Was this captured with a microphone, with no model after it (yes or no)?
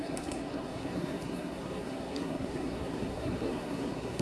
no